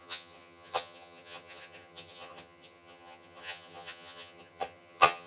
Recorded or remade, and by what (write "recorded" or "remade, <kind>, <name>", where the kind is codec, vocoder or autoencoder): remade, vocoder, HiFi-GAN